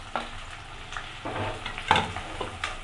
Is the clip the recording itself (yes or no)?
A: yes